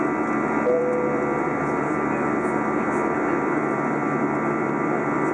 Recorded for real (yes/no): no